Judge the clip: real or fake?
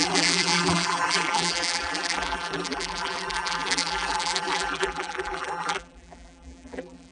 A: fake